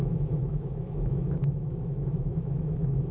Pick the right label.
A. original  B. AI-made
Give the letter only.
B